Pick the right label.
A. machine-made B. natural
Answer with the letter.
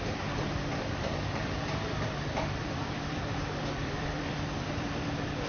A